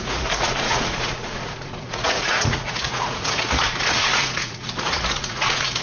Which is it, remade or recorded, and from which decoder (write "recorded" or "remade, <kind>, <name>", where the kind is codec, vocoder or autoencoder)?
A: remade, vocoder, Vocos